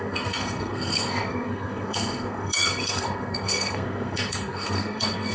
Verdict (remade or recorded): remade